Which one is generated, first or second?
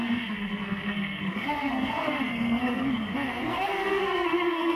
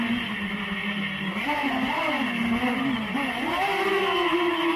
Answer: first